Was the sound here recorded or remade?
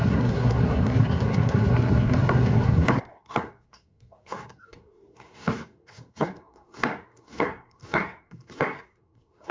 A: remade